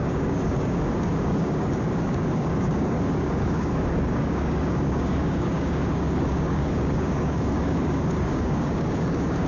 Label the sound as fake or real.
fake